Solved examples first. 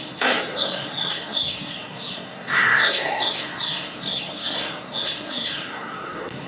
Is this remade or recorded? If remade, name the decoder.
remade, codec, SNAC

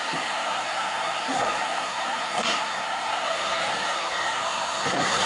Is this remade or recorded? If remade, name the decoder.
remade, codec, SNAC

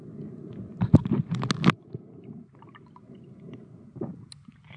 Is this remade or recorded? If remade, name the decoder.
recorded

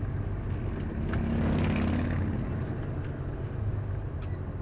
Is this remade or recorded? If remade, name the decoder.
recorded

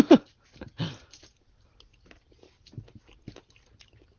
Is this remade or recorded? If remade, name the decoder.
recorded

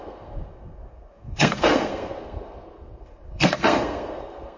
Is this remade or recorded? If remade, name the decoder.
remade, codec, SNAC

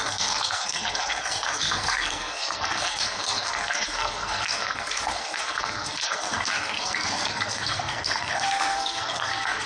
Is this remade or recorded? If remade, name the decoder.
remade, codec, SNAC